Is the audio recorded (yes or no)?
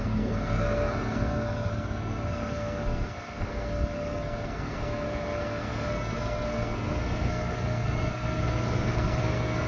no